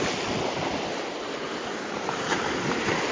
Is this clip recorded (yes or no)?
yes